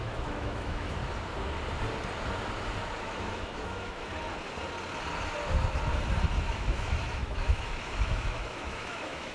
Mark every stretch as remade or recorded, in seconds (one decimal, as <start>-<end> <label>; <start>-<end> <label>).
0.0-1.0 remade; 1.0-3.0 recorded; 3.0-4.1 remade; 4.1-6.4 recorded; 6.4-9.3 remade